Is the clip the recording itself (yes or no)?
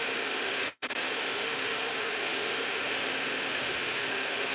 no